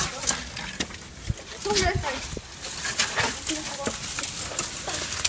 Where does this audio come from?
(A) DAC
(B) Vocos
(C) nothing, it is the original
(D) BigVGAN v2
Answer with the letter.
C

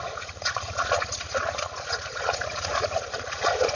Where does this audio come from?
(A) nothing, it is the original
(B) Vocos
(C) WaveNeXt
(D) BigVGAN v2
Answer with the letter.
B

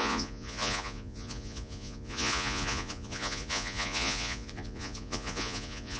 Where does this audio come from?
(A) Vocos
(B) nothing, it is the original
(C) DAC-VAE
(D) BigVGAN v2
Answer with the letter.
A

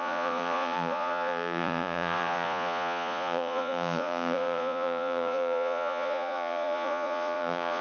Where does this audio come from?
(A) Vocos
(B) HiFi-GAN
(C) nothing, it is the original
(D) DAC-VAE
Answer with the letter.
A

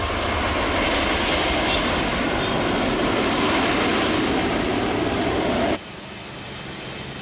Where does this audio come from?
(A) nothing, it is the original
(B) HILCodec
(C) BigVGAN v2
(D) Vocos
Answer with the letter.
A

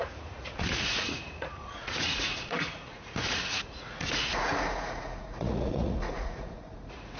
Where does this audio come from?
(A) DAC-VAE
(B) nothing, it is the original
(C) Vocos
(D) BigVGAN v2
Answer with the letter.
C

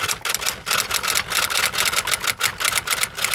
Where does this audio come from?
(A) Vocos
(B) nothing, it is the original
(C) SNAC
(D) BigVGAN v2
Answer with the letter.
B